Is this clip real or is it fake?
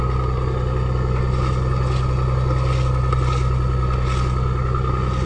real